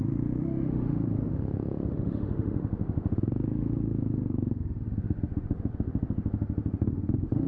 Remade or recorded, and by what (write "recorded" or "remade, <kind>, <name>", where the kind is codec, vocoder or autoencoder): remade, autoencoder, DAC-VAE